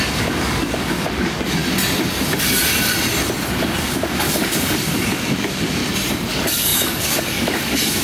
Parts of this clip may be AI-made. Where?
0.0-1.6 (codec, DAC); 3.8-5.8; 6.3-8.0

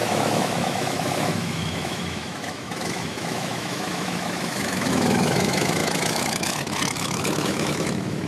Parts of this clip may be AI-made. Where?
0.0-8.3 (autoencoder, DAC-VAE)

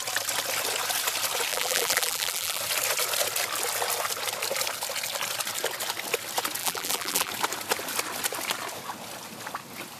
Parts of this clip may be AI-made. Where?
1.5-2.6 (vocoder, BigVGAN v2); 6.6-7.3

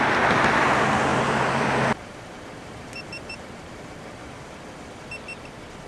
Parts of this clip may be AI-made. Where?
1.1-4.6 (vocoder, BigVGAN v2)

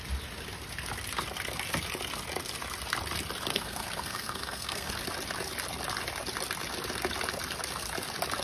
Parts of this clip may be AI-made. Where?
3.5-4.9 (codec, SNAC)

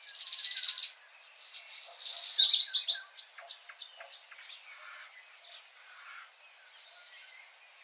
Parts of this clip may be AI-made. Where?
none

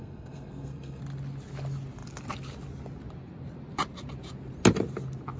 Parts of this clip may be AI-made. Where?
0.0-1.0 (codec, SNAC)